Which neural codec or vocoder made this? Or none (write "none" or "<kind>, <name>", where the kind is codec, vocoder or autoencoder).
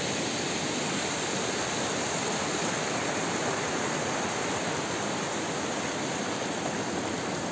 none